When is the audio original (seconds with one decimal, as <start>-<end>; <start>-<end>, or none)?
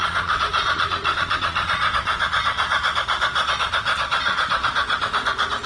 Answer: 2.6-3.3; 5.1-5.7